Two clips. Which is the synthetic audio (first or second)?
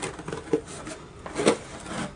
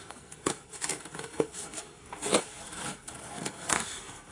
second